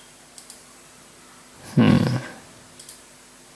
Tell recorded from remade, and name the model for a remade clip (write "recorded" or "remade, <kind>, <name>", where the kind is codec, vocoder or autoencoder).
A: recorded